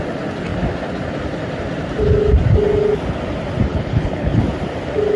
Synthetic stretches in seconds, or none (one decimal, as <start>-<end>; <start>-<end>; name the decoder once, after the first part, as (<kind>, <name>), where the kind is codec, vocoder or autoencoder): 3.7-4.4 (codec, HILCodec)